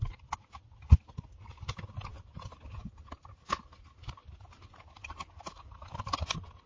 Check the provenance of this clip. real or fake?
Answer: real